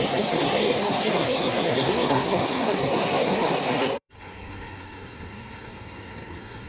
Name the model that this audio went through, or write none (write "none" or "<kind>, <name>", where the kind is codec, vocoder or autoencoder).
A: codec, SNAC